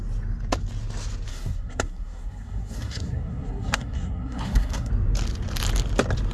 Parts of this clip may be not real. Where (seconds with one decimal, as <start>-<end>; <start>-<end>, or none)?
1.3-4.9

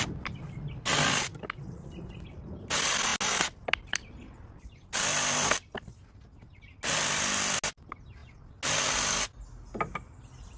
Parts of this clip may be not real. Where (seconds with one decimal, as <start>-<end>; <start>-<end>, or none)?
none

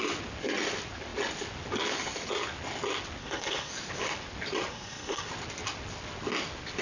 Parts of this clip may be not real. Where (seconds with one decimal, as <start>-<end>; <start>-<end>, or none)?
3.2-3.7; 4.7-5.3

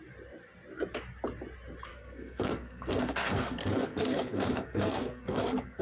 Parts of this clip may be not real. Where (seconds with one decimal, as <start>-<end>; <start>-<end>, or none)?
1.9-5.8

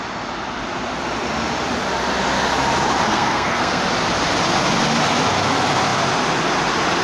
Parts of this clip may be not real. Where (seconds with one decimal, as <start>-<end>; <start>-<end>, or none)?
3.1-3.8

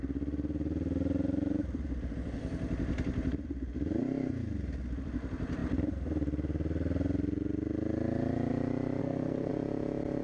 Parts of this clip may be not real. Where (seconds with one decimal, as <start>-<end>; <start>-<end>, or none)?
9.0-9.5

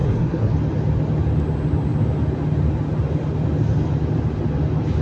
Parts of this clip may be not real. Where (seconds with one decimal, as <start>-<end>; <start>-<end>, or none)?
0.0-0.5